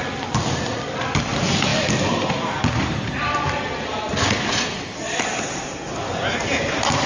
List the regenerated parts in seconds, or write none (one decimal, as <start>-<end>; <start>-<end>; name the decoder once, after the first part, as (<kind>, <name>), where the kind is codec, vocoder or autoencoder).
none